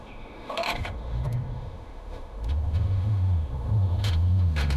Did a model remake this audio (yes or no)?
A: yes